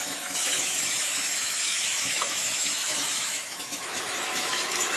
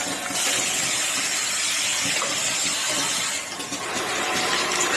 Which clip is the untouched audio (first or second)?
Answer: second